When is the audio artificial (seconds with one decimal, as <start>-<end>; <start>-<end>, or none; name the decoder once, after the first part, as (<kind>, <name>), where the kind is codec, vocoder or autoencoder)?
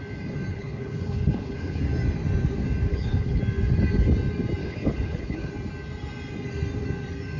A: 0.5-1.8 (codec, HILCodec); 2.9-3.4; 4.6-5.5